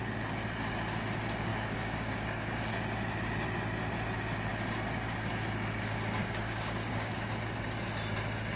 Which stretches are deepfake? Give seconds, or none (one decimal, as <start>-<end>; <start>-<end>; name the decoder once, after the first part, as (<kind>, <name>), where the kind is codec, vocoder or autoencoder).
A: 1.5-2.7 (codec, DAC); 6.2-7.3